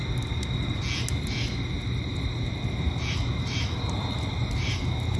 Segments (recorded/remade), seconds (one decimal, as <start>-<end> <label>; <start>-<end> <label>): 0.0-3.1 recorded; 3.1-5.2 remade